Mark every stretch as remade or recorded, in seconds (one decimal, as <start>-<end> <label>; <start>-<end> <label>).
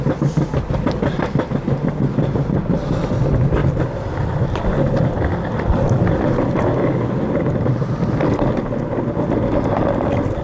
0.0-10.4 recorded